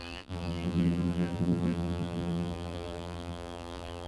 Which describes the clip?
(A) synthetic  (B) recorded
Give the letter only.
A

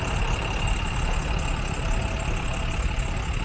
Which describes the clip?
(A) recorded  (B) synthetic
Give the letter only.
A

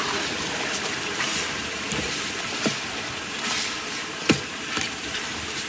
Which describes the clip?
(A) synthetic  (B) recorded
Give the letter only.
A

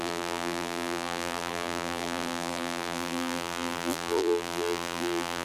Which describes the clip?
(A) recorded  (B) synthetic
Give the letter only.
B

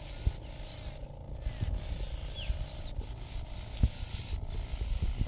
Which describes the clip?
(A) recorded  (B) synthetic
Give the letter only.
A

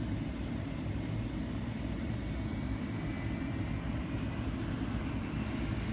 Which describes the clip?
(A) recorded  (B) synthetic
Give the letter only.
A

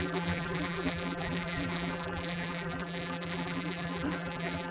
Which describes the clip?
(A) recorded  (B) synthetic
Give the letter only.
B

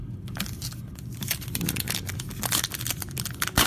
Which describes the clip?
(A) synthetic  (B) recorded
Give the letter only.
B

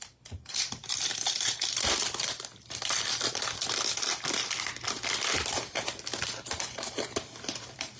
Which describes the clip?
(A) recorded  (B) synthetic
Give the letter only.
B